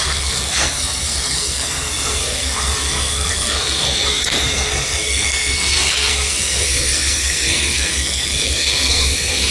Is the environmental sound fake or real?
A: fake